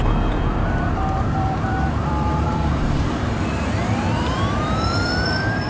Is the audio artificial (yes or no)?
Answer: yes